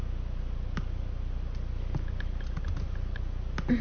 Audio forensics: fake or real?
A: real